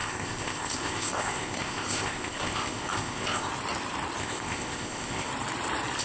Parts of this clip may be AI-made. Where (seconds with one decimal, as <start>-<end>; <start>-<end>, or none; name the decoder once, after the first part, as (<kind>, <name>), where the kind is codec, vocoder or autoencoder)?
0.0-3.5 (codec, ZipCodec); 4.2-5.3